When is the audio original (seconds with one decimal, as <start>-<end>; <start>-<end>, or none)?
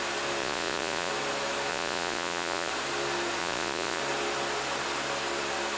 0.0-0.4; 1.1-1.7; 2.7-3.4; 4.0-5.8